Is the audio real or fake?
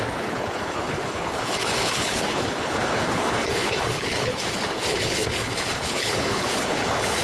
fake